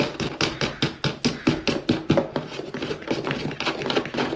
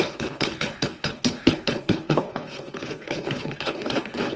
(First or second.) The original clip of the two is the first